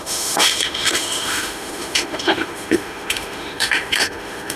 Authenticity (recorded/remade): remade